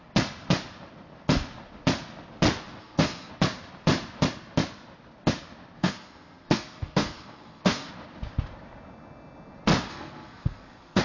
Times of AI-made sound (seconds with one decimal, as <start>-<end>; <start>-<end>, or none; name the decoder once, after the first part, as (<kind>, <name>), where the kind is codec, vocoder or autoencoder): 2.8-3.3 (codec, SNAC); 5.8-7.9; 9.9-11.0